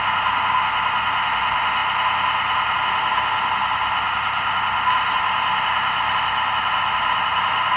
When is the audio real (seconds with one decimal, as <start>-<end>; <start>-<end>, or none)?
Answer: 1.8-2.8